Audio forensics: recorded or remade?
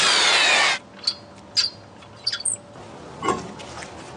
recorded